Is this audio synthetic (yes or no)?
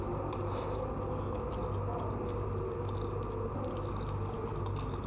no